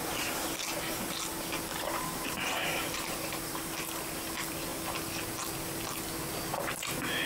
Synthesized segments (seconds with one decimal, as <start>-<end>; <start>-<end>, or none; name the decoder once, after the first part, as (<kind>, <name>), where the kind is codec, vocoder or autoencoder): 1.7-3.4 (vocoder, BigVGAN v2)